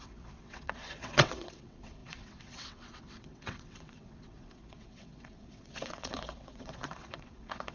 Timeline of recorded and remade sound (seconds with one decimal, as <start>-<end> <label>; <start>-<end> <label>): 0.0-7.7 remade